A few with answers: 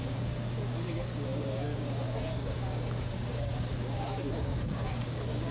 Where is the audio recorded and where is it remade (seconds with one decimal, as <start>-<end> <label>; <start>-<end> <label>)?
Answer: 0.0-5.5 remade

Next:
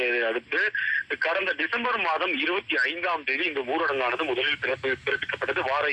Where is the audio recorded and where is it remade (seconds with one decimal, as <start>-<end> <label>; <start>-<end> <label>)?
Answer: 0.0-4.7 recorded; 4.7-5.3 remade; 5.3-5.9 recorded

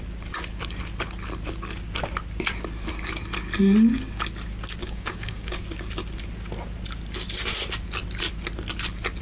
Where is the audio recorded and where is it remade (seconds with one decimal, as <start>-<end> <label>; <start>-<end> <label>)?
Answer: 0.0-4.8 recorded; 4.8-5.6 remade; 5.6-9.2 recorded